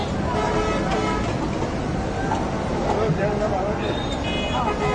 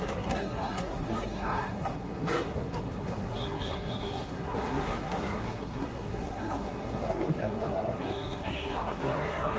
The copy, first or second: second